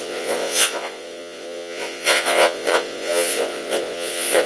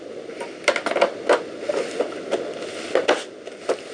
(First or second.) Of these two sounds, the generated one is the first